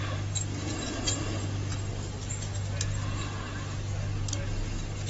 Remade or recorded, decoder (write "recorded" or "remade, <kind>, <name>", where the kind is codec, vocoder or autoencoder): recorded